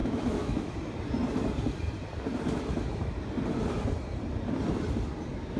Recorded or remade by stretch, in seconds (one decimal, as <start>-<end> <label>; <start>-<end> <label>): 0.0-0.7 remade; 0.7-5.6 recorded